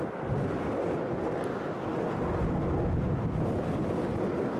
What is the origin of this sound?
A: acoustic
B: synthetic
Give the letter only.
A